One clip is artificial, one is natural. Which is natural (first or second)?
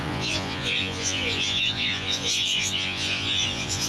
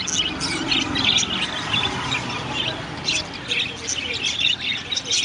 second